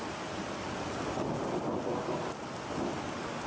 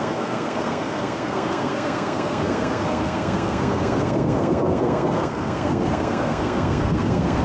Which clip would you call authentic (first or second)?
first